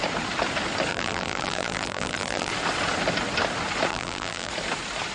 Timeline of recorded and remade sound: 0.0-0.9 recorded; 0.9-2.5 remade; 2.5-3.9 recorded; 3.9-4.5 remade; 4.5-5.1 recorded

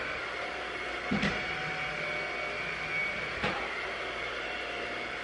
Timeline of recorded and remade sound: 0.0-3.0 recorded; 3.0-5.2 remade

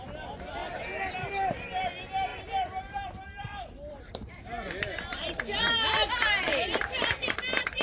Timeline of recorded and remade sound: 0.0-2.3 recorded; 2.3-4.3 remade; 4.3-5.1 recorded; 5.1-5.7 remade; 5.7-6.5 recorded; 6.5-7.2 remade; 7.2-7.8 recorded

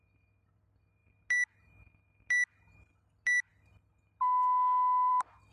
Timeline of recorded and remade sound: 0.0-5.5 recorded